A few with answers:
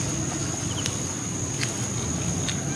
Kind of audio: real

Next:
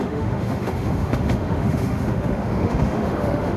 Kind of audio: fake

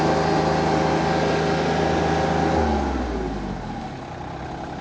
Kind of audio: real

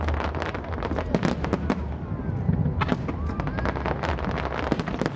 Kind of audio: real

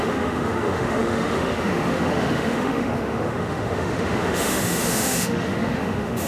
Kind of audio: fake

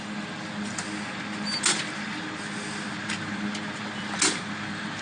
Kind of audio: real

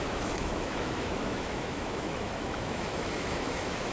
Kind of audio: fake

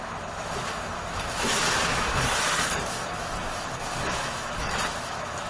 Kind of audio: fake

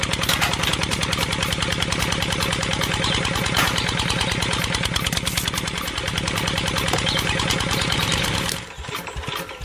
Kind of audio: real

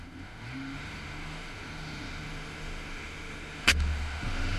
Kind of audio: fake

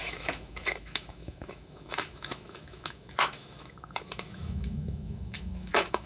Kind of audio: fake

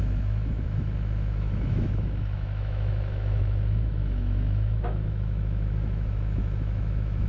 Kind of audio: fake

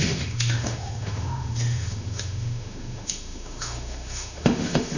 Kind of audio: fake